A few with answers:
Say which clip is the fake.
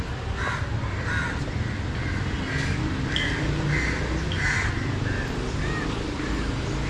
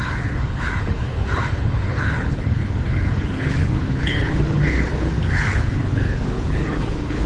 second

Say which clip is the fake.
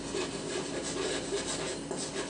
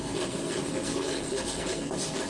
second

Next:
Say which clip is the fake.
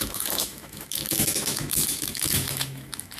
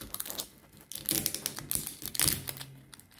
first